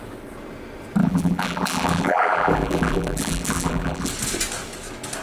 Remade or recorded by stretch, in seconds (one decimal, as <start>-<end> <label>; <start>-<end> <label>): 0.0-1.0 recorded; 1.0-4.1 remade; 4.1-5.2 recorded